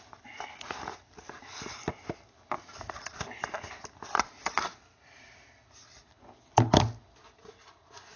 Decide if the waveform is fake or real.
real